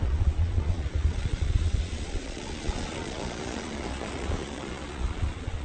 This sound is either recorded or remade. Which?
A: remade